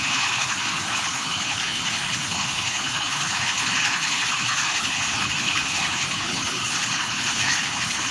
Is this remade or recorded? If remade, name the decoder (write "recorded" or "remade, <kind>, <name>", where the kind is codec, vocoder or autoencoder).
remade, codec, HILCodec